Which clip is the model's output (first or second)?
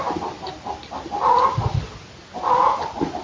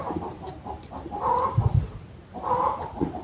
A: second